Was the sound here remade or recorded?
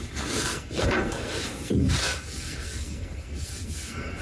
remade